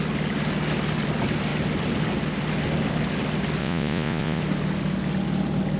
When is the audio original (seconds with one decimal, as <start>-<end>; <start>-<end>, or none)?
0.0-3.6; 4.4-5.8